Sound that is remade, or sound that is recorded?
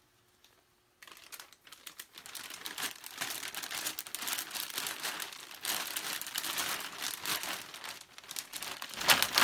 recorded